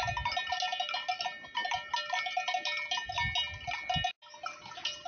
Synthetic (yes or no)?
no